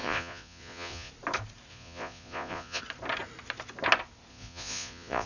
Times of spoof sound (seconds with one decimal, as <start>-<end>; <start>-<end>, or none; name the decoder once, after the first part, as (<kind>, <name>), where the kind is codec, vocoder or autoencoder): 0.0-1.1 (vocoder, Vocos); 1.7-2.8; 4.3-5.3